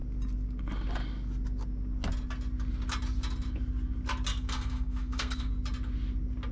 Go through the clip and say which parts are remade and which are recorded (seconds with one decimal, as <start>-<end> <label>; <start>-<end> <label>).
0.0-4.3 recorded; 4.3-5.5 remade; 5.5-6.5 recorded